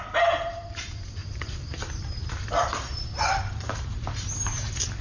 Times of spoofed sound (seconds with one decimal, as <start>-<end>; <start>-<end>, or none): 1.2-3.8